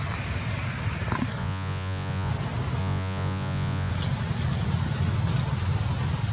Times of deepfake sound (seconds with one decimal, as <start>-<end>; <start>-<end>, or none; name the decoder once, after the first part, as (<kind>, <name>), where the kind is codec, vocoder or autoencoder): 1.4-2.3 (vocoder, Vocos); 2.8-3.9